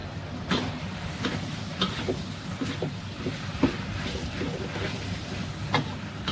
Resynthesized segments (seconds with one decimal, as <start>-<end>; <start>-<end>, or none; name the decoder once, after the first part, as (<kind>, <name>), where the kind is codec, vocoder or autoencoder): none